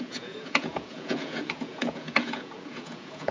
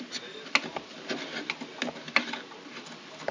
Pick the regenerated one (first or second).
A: first